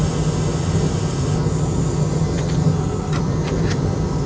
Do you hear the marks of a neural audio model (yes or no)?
no